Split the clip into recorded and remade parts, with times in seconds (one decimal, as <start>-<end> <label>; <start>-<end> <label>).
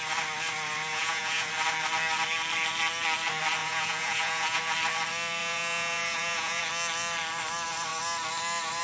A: 0.0-0.9 recorded; 0.9-1.5 remade; 1.5-3.6 recorded; 3.6-4.6 remade; 4.6-5.4 recorded; 5.4-6.6 remade; 6.6-8.8 recorded